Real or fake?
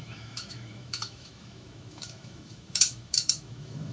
fake